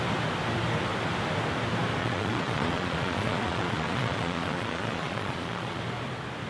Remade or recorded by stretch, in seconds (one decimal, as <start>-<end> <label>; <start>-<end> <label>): 0.0-2.0 recorded; 2.0-5.8 remade; 5.8-6.5 recorded